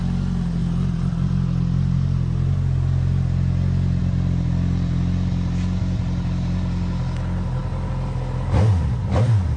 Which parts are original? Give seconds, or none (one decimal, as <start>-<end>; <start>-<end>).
0.0-9.6